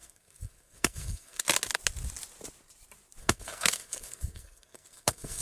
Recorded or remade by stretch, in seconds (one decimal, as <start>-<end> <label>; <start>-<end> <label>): 0.0-1.4 remade; 1.4-3.2 recorded; 3.2-5.4 remade